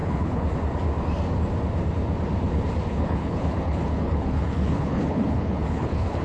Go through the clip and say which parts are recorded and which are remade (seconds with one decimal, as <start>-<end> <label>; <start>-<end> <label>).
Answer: 0.0-0.5 remade; 0.5-2.9 recorded; 2.9-6.2 remade